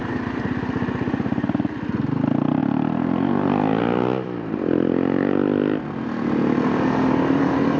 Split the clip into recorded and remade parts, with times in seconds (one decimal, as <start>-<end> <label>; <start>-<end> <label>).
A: 0.0-7.8 recorded